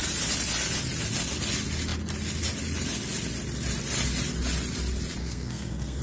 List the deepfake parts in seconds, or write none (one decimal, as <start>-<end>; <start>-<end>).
5.2-6.0